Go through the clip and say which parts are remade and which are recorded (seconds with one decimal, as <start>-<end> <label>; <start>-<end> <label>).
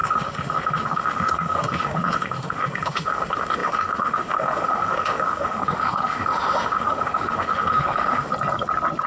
0.0-8.3 remade; 8.3-9.1 recorded